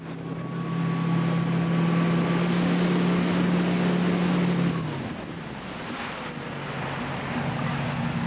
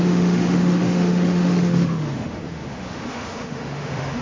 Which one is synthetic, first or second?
second